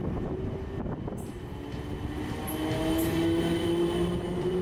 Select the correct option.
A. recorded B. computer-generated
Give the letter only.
A